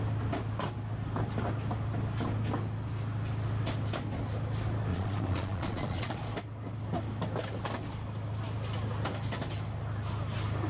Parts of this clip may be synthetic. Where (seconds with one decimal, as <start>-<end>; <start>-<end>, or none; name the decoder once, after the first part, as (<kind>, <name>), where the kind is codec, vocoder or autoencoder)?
4.9-6.2 (vocoder, Vocos)